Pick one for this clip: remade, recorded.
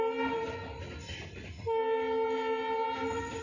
recorded